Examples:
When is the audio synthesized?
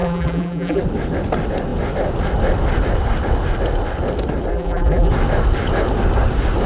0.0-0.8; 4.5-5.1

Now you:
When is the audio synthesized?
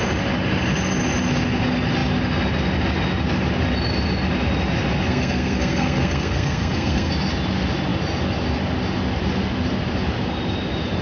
5.1-7.1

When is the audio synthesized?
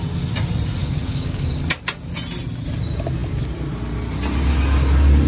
0.8-1.6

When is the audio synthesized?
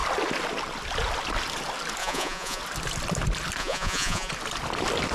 2.0-2.6; 3.6-4.3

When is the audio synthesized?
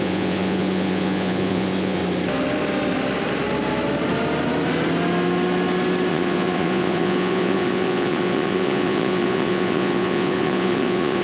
0.0-2.0; 6.1-11.2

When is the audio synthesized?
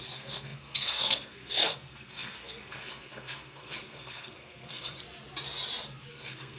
0.0-5.0; 6.1-6.6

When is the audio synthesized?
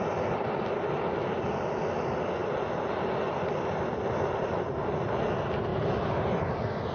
5.7-6.5